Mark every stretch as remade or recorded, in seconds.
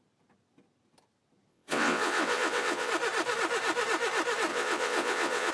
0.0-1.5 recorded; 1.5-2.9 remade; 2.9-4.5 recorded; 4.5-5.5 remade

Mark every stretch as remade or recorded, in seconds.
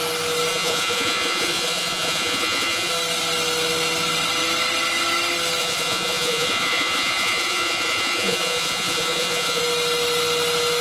0.0-0.5 recorded; 0.5-2.9 remade; 2.9-5.6 recorded; 5.6-9.6 remade; 9.6-10.8 recorded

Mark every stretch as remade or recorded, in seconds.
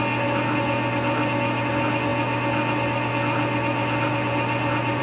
0.0-5.0 recorded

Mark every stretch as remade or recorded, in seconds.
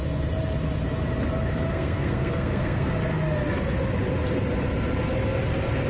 0.0-1.7 recorded; 1.7-2.9 remade; 2.9-5.9 recorded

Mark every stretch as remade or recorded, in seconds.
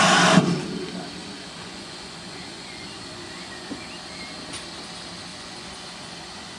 0.0-1.2 recorded; 1.2-3.8 remade; 3.8-5.3 recorded; 5.3-6.6 remade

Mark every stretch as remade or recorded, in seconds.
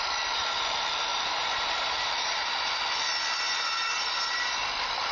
0.0-5.1 recorded